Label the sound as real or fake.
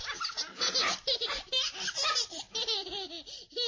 real